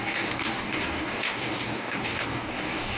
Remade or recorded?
remade